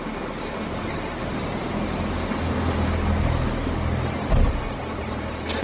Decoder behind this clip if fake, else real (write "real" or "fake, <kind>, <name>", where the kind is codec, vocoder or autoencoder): real